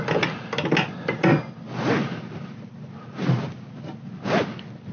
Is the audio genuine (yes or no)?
yes